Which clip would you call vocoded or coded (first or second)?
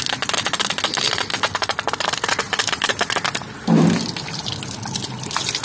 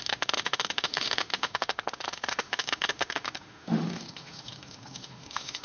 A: second